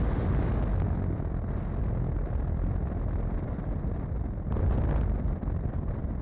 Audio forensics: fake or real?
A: real